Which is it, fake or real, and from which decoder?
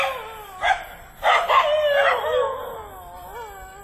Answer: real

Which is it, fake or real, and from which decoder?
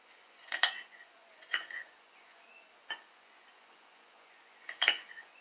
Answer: fake, vocoder, Vocos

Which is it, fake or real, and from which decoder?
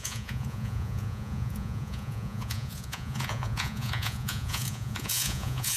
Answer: fake, vocoder, Vocos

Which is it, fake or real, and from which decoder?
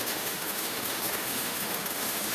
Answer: fake, autoencoder, DAC-VAE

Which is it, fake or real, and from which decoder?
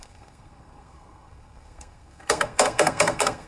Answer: fake, codec, SNAC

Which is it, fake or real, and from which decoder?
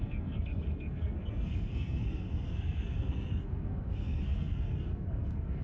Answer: fake, codec, SNAC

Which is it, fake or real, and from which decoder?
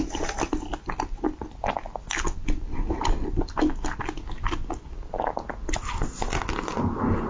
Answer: real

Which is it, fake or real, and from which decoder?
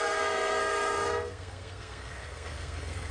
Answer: fake, codec, SNAC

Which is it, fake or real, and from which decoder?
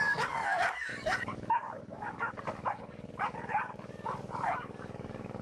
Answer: fake, codec, DAC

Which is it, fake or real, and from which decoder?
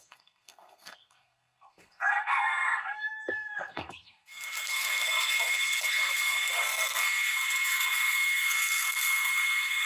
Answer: fake, codec, SNAC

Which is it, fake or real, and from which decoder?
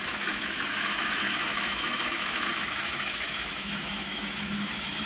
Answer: fake, autoencoder, DAC-VAE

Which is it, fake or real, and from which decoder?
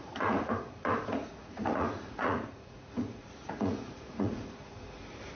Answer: fake, vocoder, Vocos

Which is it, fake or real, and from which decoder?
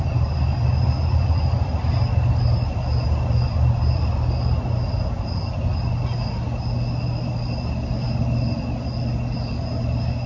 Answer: real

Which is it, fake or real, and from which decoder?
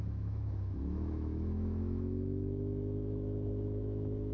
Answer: fake, autoencoder, DAC-VAE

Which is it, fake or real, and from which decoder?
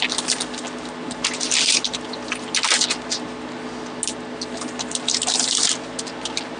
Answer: real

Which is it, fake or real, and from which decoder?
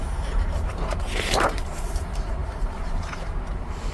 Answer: fake, vocoder, BigVGAN v2